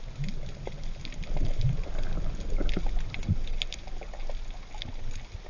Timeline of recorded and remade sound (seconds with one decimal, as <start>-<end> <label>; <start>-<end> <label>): 0.0-5.5 recorded